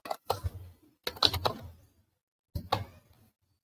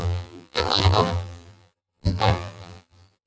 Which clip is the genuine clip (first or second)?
first